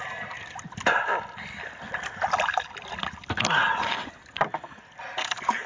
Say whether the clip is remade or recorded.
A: recorded